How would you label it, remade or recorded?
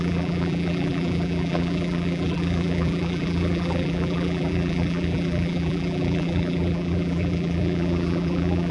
remade